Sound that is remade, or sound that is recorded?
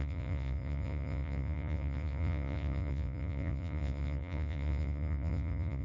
remade